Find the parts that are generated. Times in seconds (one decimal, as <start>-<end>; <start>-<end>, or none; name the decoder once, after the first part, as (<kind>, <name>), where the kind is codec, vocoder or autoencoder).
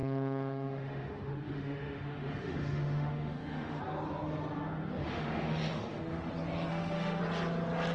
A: 0.0-3.8 (autoencoder, DAC-VAE); 5.0-6.3; 6.7-7.2